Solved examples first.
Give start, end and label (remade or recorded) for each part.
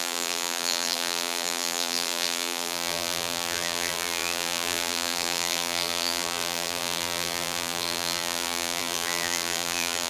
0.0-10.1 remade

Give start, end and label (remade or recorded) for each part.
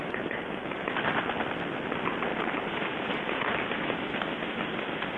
0.0-0.9 remade; 0.9-2.3 recorded; 2.3-3.7 remade; 3.7-5.2 recorded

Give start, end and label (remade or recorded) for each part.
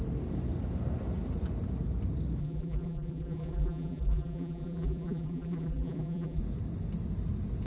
0.0-2.4 recorded; 2.4-6.4 remade; 6.4-7.7 recorded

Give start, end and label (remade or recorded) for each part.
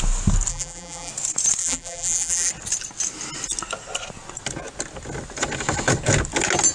0.0-0.5 recorded; 0.5-1.1 remade; 1.1-1.6 recorded; 1.6-2.5 remade; 2.5-6.7 recorded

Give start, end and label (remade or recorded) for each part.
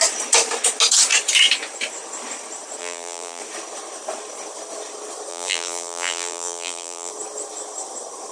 0.0-2.8 recorded; 2.8-3.4 remade; 3.4-5.3 recorded; 5.3-7.1 remade; 7.1-8.3 recorded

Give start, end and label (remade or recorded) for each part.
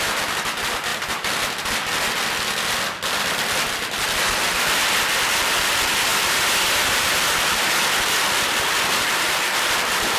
0.0-0.9 recorded; 0.9-1.6 remade; 1.6-6.1 recorded; 6.1-10.2 remade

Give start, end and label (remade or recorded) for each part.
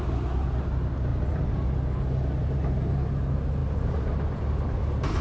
0.0-1.1 recorded; 1.1-1.7 remade; 1.7-3.6 recorded; 3.6-4.8 remade; 4.8-5.2 recorded